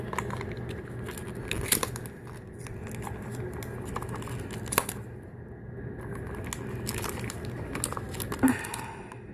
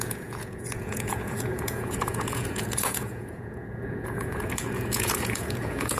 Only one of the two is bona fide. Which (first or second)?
first